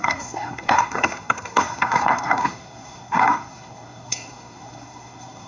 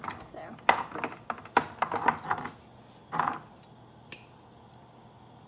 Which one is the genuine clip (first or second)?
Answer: second